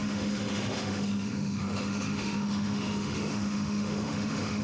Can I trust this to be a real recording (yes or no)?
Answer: no